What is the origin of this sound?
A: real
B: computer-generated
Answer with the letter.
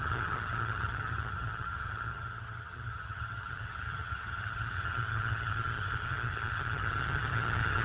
B